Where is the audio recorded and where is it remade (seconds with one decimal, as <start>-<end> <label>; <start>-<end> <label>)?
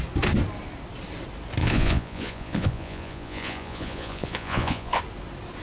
0.0-1.6 recorded; 1.6-5.0 remade; 5.0-5.6 recorded